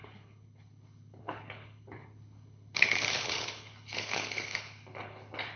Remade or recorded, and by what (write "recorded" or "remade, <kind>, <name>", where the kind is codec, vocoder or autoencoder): remade, codec, HILCodec